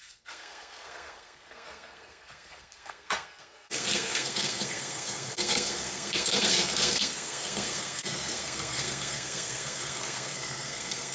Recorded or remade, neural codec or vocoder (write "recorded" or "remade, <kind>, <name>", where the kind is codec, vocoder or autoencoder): remade, codec, SNAC